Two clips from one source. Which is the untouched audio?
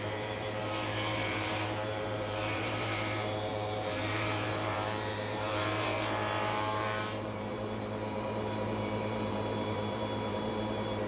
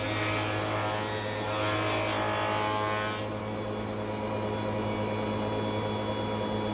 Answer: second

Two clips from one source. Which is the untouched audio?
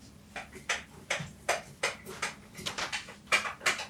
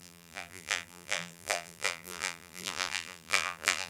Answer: first